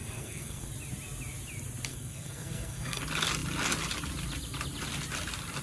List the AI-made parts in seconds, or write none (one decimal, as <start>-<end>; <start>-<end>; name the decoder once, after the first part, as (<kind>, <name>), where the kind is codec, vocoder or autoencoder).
0.0-0.7 (codec, SNAC); 1.9-3.0